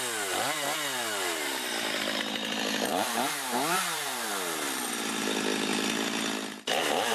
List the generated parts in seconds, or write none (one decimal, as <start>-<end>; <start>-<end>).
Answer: 2.9-4.3